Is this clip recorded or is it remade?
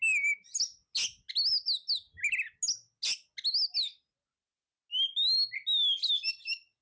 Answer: recorded